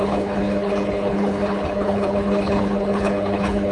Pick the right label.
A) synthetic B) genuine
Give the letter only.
A